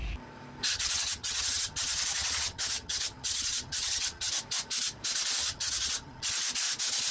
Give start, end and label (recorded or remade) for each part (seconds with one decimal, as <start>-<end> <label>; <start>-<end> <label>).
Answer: 0.0-0.7 recorded; 0.7-4.3 remade; 4.3-5.4 recorded; 5.4-6.3 remade; 6.3-7.1 recorded